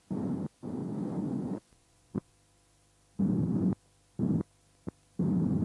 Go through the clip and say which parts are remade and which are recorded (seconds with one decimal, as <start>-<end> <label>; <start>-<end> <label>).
0.0-0.8 recorded; 0.8-2.3 remade; 2.3-5.6 recorded